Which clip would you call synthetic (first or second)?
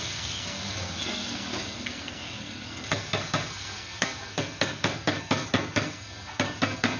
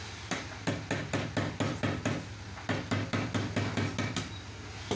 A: first